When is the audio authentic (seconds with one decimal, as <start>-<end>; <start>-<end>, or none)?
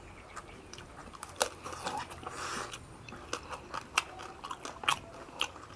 0.0-5.8